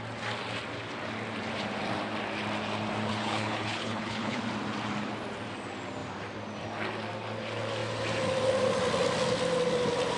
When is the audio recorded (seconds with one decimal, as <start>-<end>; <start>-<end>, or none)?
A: 0.0-3.1; 4.4-10.2